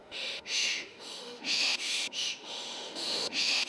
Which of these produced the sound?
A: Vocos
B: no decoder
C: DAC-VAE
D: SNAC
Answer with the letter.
C